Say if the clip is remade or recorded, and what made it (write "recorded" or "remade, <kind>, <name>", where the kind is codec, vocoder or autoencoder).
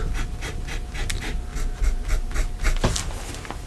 recorded